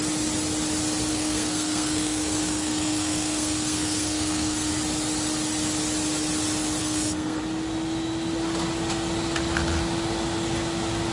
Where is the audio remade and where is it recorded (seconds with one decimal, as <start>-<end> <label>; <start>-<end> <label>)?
0.0-1.1 recorded; 1.1-4.7 remade; 4.7-6.8 recorded; 6.8-7.4 remade; 7.4-11.1 recorded